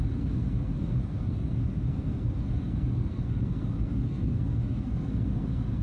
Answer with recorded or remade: remade